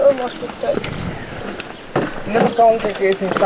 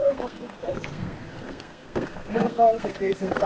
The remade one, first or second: second